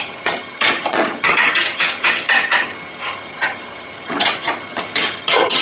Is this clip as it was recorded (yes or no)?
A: no